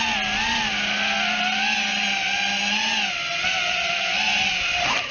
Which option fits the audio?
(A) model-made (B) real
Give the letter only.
B